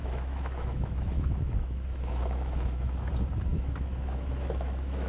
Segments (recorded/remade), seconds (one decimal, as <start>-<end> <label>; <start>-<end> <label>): 0.0-3.1 remade; 3.1-3.5 recorded; 3.5-5.1 remade